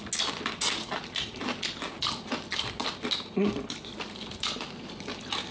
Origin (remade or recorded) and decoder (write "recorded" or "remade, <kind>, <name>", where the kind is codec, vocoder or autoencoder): recorded